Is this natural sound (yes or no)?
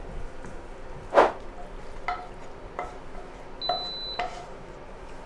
yes